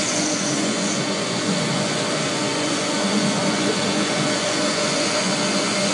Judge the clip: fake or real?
fake